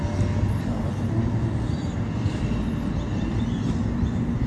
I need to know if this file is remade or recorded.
recorded